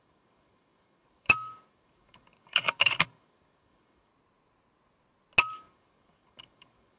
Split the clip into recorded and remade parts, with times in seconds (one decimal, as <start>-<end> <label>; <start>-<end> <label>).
0.0-4.1 remade; 4.1-5.5 recorded; 5.5-7.0 remade